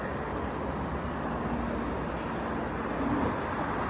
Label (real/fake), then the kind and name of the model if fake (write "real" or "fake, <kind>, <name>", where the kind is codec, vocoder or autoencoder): real